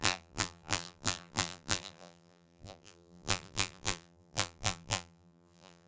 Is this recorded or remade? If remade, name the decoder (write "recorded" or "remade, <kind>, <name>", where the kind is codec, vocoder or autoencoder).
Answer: remade, vocoder, BigVGAN v2